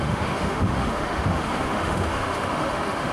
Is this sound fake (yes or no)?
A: yes